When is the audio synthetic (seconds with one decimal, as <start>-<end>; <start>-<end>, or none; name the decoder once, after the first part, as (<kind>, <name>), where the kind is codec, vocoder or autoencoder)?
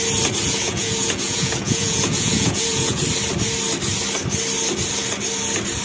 0.4-3.0 (vocoder, Vocos)